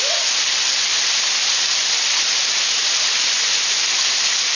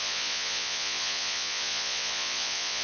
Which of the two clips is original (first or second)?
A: first